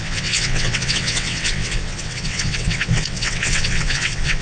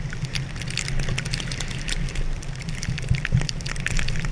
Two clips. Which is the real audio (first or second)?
second